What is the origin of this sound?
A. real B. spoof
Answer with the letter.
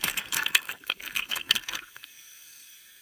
B